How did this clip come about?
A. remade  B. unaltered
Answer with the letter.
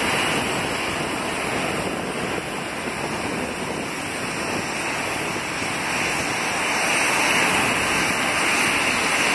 B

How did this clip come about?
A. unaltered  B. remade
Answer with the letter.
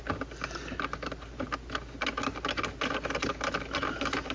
A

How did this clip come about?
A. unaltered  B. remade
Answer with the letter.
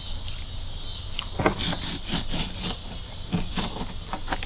A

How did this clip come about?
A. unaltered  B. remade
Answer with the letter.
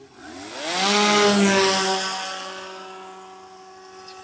A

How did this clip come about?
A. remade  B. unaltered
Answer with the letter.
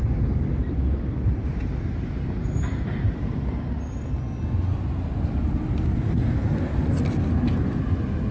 B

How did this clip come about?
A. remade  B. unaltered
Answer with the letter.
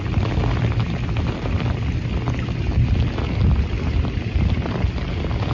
B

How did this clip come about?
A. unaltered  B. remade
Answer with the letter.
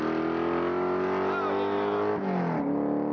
A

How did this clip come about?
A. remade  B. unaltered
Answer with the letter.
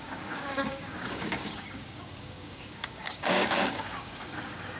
A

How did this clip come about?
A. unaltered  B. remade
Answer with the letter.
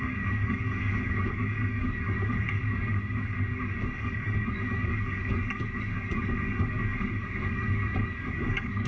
B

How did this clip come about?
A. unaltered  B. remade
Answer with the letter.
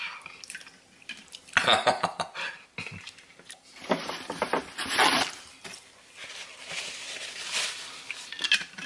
A